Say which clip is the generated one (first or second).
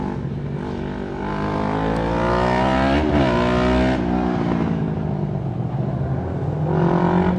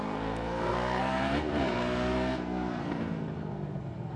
second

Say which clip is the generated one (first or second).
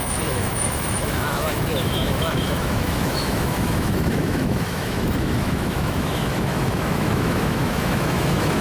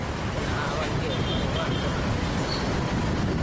first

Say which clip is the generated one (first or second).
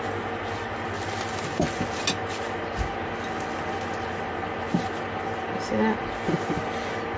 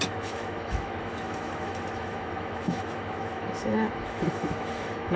second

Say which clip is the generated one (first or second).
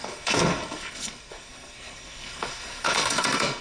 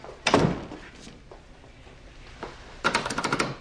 first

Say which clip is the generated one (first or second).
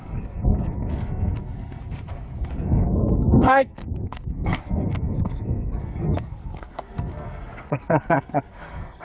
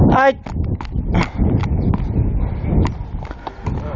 first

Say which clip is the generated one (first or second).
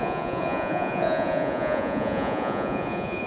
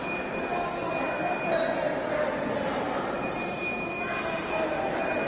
first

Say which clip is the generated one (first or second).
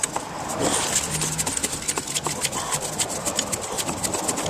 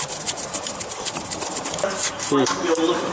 second